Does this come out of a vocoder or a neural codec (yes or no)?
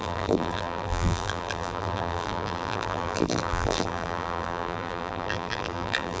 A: yes